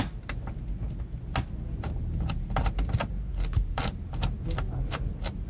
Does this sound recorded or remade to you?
recorded